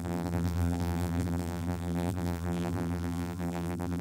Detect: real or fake fake